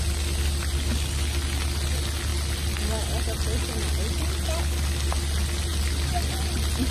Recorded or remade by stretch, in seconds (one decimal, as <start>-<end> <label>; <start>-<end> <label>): 0.0-6.9 recorded